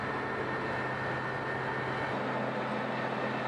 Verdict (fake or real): real